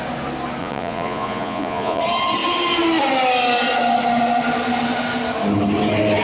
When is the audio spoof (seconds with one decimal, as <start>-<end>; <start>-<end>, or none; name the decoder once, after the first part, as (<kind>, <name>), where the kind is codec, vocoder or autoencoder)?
0.6-2.0 (vocoder, Vocos)